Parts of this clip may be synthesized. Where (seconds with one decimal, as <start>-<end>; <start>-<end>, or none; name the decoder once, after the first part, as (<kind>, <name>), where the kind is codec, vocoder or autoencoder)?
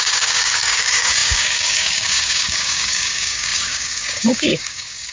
0.0-5.1 (codec, DAC)